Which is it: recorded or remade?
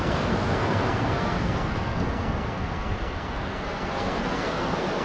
remade